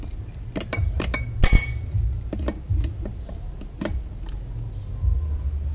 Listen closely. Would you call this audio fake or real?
real